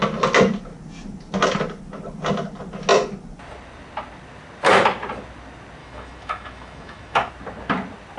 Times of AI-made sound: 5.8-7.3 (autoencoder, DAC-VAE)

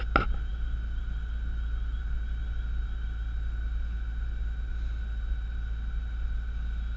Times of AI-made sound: none

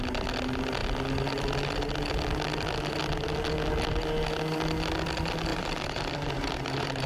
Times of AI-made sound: 5.5-7.1 (vocoder, BigVGAN v2)

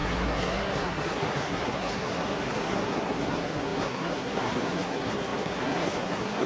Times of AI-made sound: 0.0-6.5 (codec, SNAC)

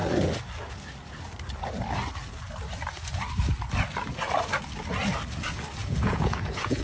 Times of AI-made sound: 5.8-6.8 (vocoder, Vocos)

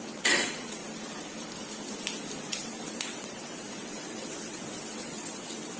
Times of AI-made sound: 0.0-0.8 (vocoder, WaveNeXt); 2.5-5.8

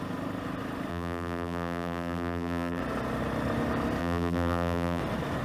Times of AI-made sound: 0.9-2.8 (vocoder, BigVGAN v2); 4.0-5.0